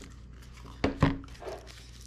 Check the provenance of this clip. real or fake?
real